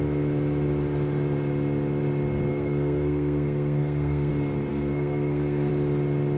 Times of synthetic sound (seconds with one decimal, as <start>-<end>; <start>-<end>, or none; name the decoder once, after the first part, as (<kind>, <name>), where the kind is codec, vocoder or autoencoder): 2.5-4.3 (codec, SNAC); 4.7-5.7